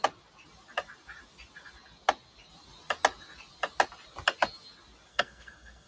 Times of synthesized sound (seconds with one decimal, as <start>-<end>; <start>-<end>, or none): 5.1-5.9